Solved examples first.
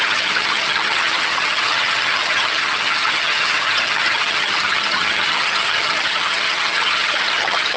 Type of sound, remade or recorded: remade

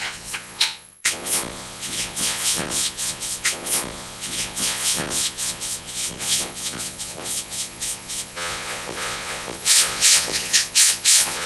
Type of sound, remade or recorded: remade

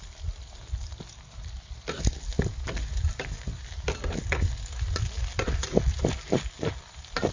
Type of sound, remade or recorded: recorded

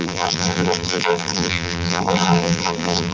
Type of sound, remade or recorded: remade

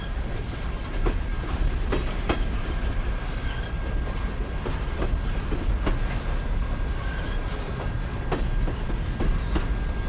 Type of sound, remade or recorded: recorded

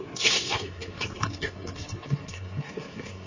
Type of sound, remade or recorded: remade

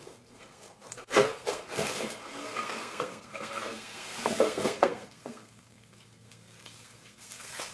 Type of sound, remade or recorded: remade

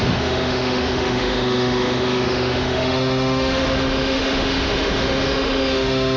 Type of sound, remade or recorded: remade